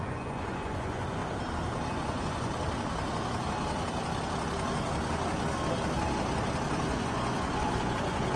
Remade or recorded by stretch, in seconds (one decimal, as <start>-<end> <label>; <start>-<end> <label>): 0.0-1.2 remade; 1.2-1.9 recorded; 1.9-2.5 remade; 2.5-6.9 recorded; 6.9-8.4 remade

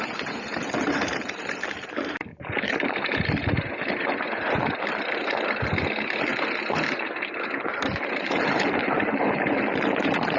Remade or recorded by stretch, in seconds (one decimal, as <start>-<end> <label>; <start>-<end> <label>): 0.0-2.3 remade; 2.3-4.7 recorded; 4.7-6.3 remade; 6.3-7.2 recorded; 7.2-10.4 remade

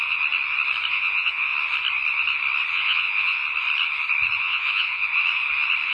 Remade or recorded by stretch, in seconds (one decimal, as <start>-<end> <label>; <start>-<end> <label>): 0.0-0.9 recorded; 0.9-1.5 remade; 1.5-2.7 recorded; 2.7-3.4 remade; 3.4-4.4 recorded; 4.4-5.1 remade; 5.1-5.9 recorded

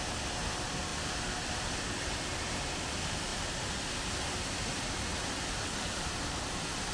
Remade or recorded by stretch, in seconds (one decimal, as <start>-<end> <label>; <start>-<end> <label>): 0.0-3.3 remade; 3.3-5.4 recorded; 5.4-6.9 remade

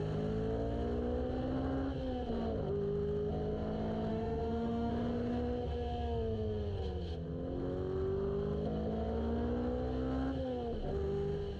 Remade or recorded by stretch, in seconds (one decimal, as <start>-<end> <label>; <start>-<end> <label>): 0.0-4.1 recorded; 4.1-4.9 remade; 4.9-11.6 recorded